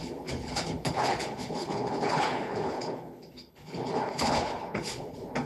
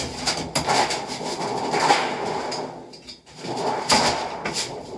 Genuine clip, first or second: second